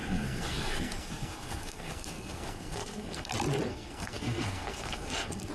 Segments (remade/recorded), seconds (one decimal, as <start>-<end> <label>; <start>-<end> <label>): 0.0-3.3 remade; 3.3-3.7 recorded; 3.7-5.5 remade